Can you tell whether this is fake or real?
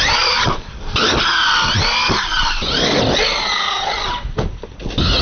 real